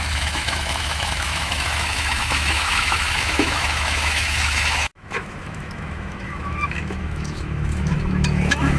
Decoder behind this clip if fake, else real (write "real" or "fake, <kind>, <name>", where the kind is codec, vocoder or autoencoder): fake, autoencoder, DAC-VAE